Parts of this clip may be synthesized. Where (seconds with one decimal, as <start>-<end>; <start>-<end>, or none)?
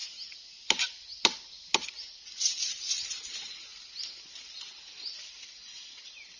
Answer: none